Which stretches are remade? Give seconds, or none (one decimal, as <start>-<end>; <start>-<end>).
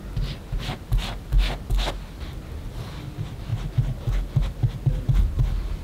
none